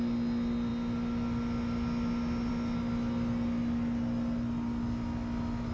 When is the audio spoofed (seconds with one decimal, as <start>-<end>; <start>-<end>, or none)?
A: none

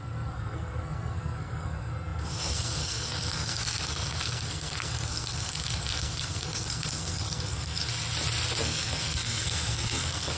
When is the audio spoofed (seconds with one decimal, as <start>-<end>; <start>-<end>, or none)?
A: 0.0-7.8; 8.6-10.4